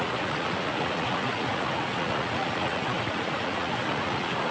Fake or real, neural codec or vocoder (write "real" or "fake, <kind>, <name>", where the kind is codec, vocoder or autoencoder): fake, vocoder, Vocos